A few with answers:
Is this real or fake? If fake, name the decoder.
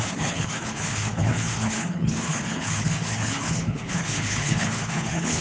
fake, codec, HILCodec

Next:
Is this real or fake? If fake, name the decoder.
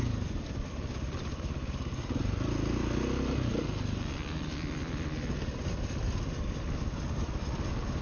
real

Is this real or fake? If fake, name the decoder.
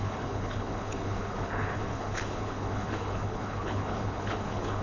fake, codec, HILCodec